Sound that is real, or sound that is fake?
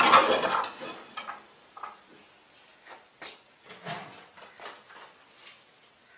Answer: real